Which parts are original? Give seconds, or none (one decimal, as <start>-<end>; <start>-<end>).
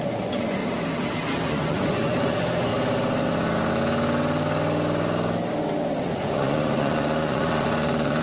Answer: 0.6-1.5; 2.7-6.0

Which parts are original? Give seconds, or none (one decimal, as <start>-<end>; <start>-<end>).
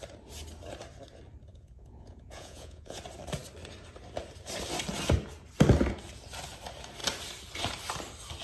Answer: 0.0-1.5; 3.0-8.4